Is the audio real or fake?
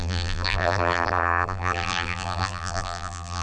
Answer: fake